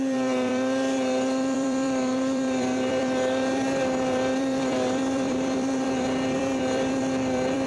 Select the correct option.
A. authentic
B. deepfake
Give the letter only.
B